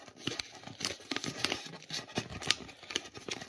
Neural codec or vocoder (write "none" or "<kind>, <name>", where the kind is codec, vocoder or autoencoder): none